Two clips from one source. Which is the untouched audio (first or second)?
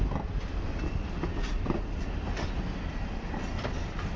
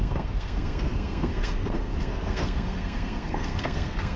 first